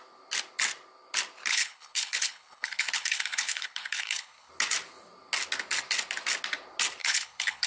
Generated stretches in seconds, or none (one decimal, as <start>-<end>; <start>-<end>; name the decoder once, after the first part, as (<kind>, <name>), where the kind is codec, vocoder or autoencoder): 1.5-4.5 (codec, HILCodec); 7.0-7.7